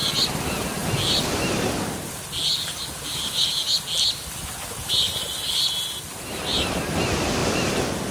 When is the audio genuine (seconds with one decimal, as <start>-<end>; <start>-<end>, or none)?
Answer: 0.0-8.1